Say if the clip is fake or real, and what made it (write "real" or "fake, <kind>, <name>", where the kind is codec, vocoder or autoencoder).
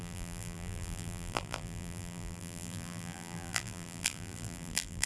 fake, vocoder, BigVGAN v2